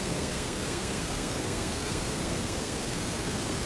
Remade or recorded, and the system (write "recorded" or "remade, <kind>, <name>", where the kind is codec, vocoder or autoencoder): remade, codec, SNAC